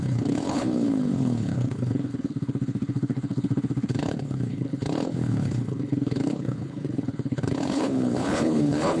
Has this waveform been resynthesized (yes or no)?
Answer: yes